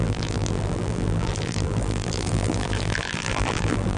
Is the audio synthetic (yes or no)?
yes